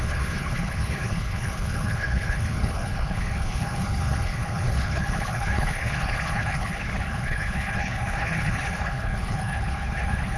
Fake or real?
fake